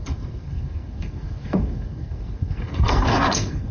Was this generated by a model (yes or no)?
yes